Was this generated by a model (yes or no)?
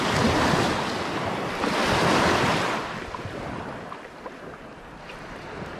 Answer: yes